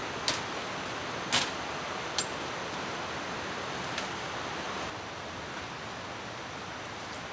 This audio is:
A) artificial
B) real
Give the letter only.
B